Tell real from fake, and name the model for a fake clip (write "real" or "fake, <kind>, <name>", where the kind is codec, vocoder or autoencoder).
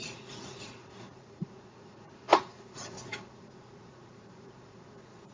fake, vocoder, Vocos